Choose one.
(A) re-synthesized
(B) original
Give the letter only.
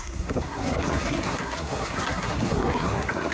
A